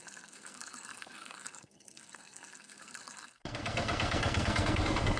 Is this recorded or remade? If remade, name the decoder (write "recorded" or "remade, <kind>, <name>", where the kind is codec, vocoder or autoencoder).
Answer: remade, codec, SNAC